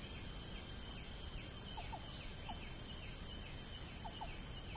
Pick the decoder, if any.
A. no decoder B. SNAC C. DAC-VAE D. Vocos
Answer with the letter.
A